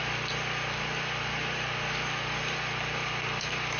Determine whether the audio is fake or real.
real